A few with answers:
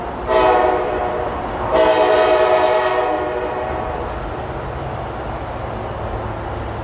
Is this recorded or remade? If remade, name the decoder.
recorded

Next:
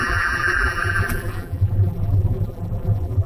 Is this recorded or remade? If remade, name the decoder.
remade, vocoder, BigVGAN v2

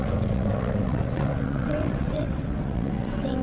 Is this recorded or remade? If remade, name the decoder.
remade, vocoder, WaveNeXt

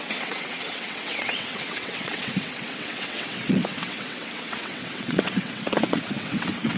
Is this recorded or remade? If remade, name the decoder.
remade, vocoder, WaveNeXt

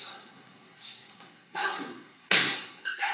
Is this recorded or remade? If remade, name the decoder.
remade, codec, SNAC